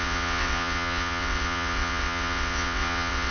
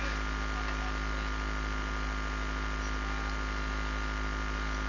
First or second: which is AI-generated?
first